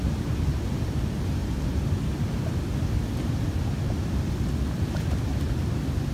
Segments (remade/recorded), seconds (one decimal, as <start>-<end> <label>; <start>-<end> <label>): 0.0-6.1 recorded